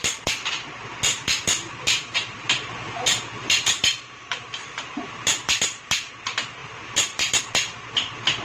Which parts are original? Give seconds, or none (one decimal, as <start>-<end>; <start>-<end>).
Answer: 0.0-1.1; 6.1-6.6; 7.4-8.4